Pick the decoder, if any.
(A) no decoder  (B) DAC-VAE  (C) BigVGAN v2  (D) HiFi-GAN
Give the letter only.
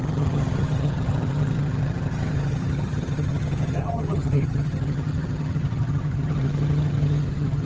D